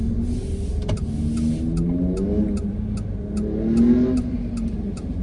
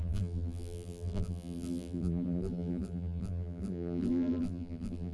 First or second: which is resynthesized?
second